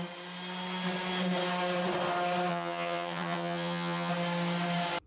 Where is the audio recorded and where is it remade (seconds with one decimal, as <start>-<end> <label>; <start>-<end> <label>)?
0.0-2.5 recorded; 2.5-4.1 remade; 4.1-5.1 recorded